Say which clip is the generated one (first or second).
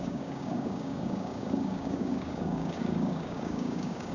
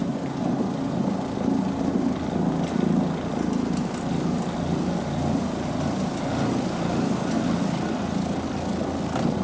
first